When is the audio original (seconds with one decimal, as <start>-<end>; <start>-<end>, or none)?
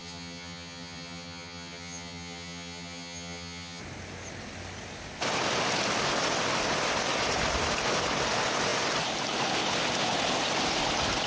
3.8-11.3